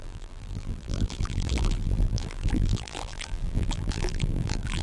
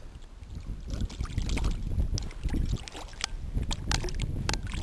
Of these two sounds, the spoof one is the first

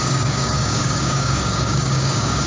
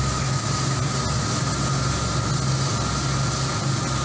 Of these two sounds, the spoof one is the first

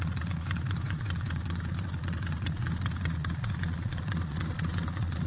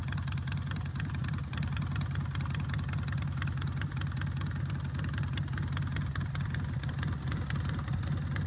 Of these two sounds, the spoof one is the first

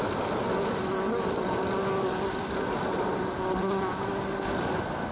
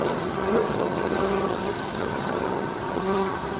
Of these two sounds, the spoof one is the second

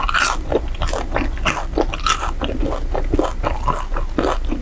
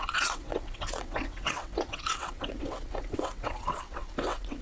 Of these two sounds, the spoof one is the second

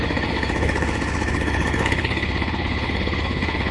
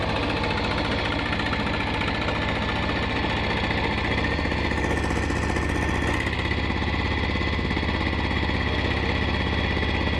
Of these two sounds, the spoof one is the first